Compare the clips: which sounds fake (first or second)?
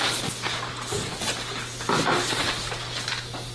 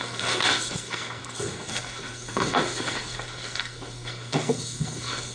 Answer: second